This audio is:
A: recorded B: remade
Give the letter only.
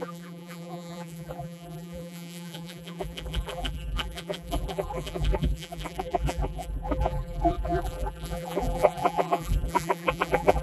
B